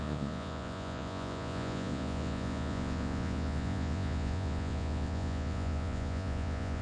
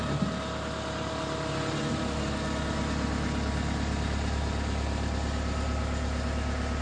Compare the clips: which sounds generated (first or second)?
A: first